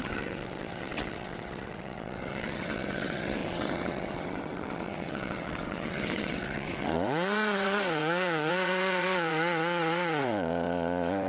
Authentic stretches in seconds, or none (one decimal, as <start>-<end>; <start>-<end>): none